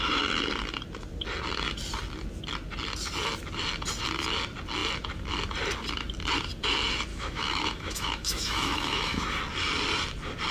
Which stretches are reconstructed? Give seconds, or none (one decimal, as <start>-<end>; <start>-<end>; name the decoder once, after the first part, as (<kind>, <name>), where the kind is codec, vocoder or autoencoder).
7.1-9.3 (autoencoder, DAC-VAE)